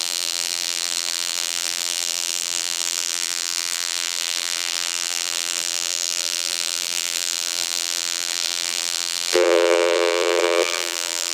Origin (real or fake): fake